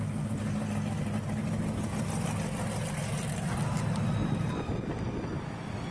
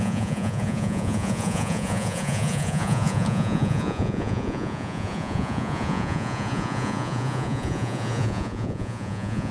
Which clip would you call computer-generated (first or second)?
second